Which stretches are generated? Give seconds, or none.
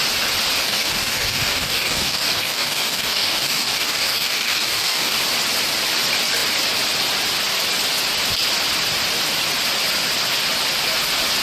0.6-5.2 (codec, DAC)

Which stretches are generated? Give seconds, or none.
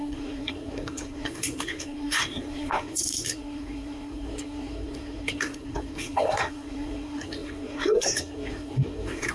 0.0-9.3 (codec, SNAC)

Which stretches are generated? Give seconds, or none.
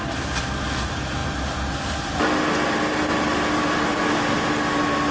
none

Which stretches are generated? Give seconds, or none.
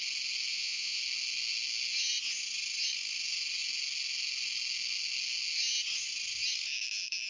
0.5-1.0 (vocoder, Vocos)